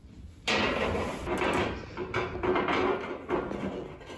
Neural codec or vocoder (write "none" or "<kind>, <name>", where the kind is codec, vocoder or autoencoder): none